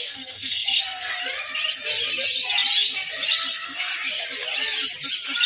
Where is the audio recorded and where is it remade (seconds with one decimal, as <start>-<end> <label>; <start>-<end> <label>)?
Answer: 0.0-1.2 remade; 1.2-3.5 recorded; 3.5-3.9 remade; 3.9-5.5 recorded